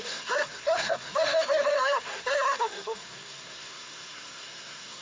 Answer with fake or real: fake